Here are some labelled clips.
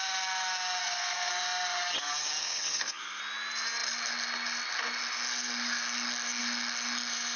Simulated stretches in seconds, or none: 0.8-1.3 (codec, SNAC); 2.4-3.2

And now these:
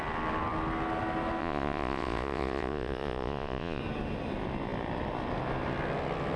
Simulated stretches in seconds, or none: 1.4-3.8 (vocoder, Vocos)

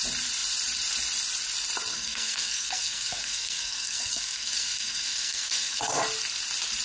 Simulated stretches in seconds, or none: 1.9-6.0 (codec, SNAC)

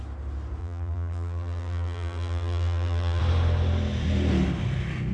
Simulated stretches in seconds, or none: 0.6-3.2 (vocoder, BigVGAN v2)

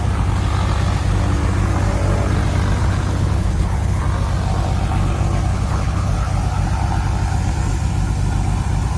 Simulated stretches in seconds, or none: 2.8-4.0 (codec, HILCodec); 5.5-6.1